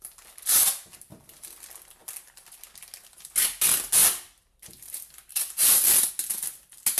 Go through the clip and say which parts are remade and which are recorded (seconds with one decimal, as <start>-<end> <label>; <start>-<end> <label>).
0.0-4.0 recorded; 4.0-6.1 remade; 6.1-7.0 recorded